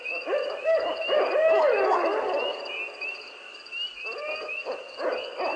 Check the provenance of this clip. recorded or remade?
remade